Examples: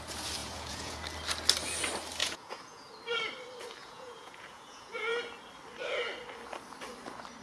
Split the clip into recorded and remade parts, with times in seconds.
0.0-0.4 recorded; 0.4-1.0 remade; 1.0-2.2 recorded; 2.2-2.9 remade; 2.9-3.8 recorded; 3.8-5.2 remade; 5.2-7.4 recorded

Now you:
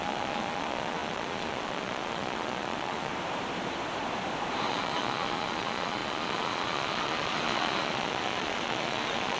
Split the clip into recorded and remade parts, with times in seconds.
0.0-3.1 remade; 3.1-4.7 recorded; 4.7-9.4 remade

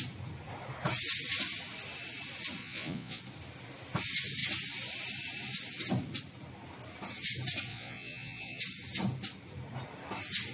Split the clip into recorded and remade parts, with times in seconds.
0.0-2.6 recorded; 2.6-3.2 remade; 3.2-7.7 recorded; 7.7-8.6 remade; 8.6-10.5 recorded

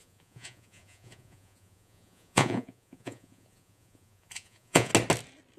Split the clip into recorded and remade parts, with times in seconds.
0.0-4.9 remade; 4.9-5.6 recorded

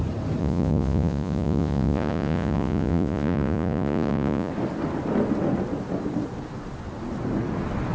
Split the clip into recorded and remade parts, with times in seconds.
0.0-0.4 recorded; 0.4-4.5 remade; 4.5-7.9 recorded